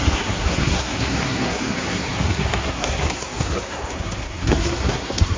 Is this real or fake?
fake